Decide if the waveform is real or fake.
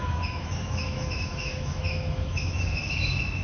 fake